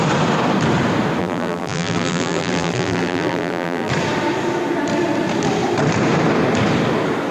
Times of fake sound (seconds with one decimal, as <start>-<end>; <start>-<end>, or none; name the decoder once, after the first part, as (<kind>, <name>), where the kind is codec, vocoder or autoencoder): 1.2-3.9 (vocoder, BigVGAN v2)